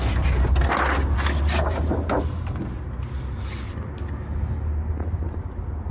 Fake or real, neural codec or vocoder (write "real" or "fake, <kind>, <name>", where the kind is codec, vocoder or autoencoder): real